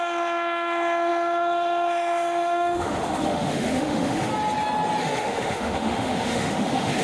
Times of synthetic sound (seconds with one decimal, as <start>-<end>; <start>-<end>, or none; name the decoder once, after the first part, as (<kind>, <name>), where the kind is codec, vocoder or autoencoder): 0.0-4.3 (autoencoder, DAC-VAE); 5.0-7.0